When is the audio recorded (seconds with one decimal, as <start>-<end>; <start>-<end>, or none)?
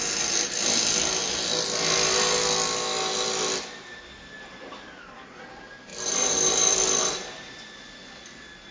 0.0-8.7